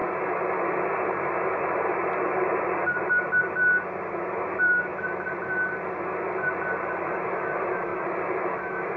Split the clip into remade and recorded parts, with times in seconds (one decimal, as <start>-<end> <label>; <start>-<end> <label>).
0.0-4.1 recorded; 4.1-4.9 remade; 4.9-7.1 recorded; 7.1-9.0 remade